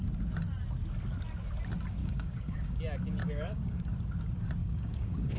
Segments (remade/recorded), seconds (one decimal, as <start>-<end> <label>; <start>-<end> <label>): 0.0-2.0 recorded; 2.0-2.8 remade; 2.8-3.2 recorded; 3.2-3.8 remade; 3.8-4.6 recorded; 4.6-5.4 remade